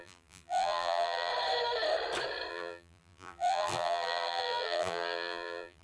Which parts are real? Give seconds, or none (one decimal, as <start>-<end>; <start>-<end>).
1.3-2.5

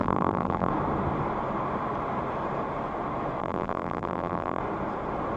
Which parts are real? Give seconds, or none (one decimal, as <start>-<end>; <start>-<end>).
0.7-3.4; 4.6-5.4

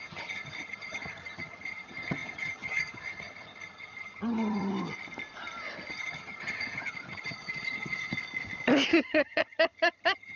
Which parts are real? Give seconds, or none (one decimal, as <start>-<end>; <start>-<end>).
4.7-5.9; 8.1-8.9

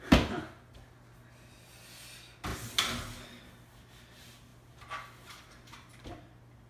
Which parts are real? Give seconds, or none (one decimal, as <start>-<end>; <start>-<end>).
0.0-6.7

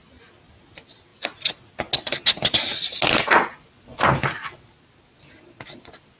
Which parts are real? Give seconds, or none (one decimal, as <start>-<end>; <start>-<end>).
0.0-6.2

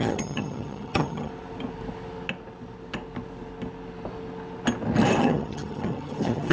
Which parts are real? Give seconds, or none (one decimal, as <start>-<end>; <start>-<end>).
1.3-5.2

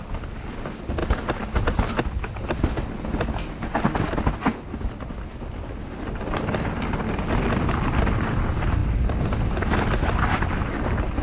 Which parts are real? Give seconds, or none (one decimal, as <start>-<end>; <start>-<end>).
0.0-11.2